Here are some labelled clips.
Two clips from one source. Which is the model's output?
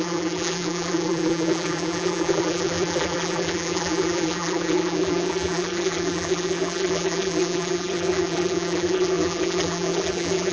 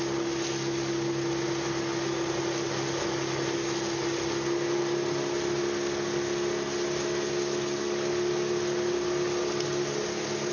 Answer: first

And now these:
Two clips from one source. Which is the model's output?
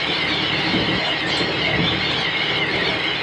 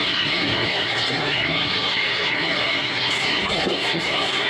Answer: second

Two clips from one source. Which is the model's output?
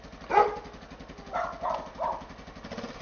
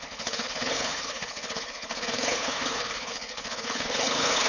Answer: second